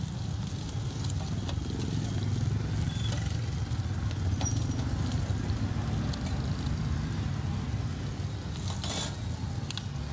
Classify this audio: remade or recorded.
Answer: recorded